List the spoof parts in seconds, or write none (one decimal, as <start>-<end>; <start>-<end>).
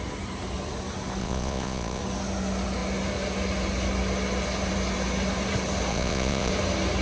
1.2-2.0; 5.9-6.5